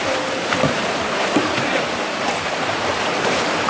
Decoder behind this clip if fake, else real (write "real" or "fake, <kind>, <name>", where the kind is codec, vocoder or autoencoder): fake, vocoder, BigVGAN v2